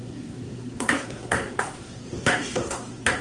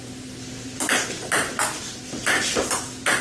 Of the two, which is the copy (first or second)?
first